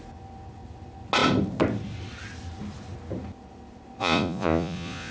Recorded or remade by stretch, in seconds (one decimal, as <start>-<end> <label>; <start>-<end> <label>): 0.0-4.0 recorded; 4.0-5.1 remade